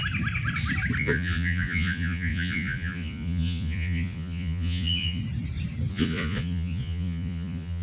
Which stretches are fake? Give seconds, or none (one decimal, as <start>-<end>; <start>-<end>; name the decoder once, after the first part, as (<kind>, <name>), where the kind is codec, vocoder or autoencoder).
1.0-5.2 (vocoder, Vocos); 5.9-7.8